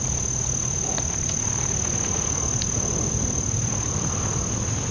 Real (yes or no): yes